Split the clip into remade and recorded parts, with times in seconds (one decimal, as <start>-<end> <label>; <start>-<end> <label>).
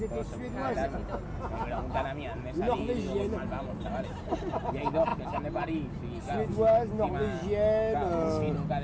0.0-8.8 recorded